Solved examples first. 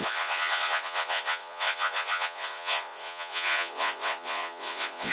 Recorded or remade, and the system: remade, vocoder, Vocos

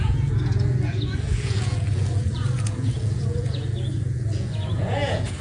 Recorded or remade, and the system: remade, vocoder, Vocos